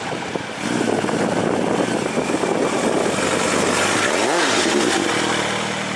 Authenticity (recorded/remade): recorded